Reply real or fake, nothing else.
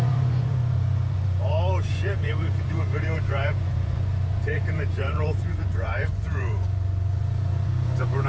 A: fake